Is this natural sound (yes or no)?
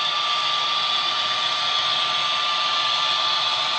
yes